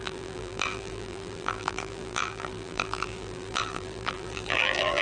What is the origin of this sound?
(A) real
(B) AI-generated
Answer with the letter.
B